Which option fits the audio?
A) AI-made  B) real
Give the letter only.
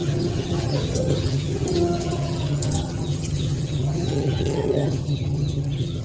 A